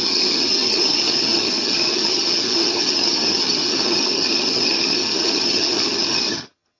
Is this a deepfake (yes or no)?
yes